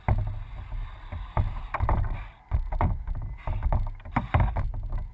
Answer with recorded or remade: recorded